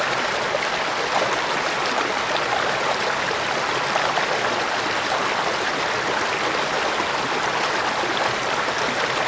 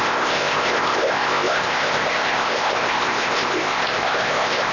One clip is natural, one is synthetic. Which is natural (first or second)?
first